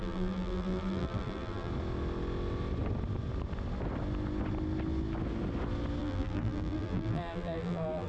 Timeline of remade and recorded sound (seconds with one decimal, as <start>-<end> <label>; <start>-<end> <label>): 0.0-1.7 remade; 1.7-6.0 recorded; 6.0-8.1 remade